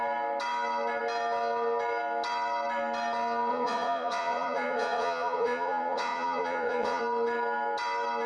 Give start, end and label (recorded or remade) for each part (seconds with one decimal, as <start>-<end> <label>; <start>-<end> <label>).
0.0-3.5 recorded; 3.5-7.0 remade; 7.0-8.3 recorded